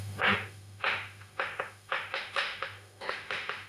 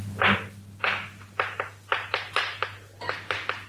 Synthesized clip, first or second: first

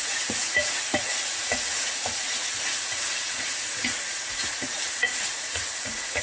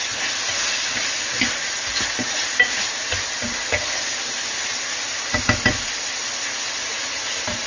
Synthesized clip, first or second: first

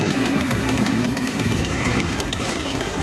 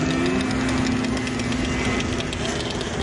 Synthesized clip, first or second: first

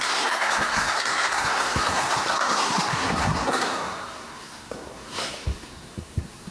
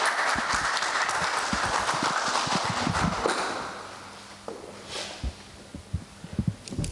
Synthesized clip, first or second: first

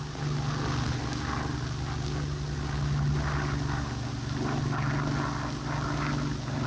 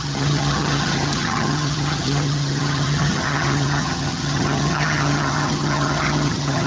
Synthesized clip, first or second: second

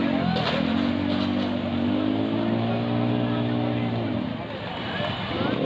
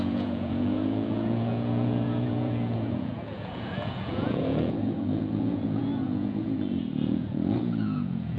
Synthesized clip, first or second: second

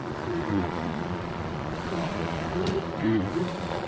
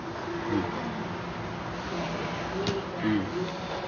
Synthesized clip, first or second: first